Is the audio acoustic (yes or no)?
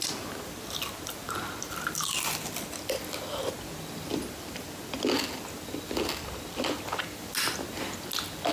yes